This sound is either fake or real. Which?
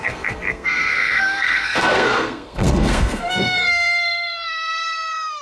fake